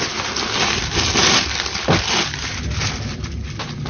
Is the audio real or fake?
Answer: real